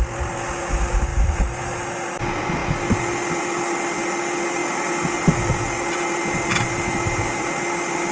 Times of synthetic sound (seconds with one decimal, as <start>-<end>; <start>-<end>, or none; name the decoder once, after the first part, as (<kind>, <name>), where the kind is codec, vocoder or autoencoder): 1.1-2.2 (vocoder, BigVGAN v2)